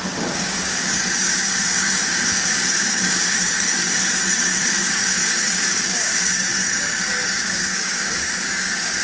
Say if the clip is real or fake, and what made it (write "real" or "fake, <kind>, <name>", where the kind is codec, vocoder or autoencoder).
fake, codec, DAC